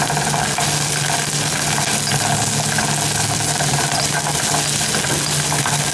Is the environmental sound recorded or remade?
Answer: recorded